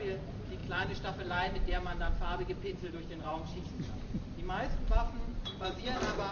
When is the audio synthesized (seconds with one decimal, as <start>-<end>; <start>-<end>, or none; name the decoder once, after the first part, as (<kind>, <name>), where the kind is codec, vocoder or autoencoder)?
0.6-3.9 (vocoder, BigVGAN v2); 5.3-6.3